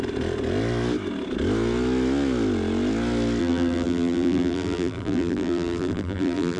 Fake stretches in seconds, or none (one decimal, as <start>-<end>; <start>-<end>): 3.4-6.6